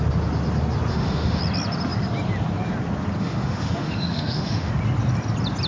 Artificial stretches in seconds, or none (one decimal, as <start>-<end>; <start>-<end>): 0.9-1.4; 3.2-4.7